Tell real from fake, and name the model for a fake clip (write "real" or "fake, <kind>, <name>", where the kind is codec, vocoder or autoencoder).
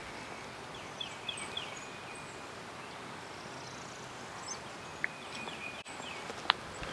real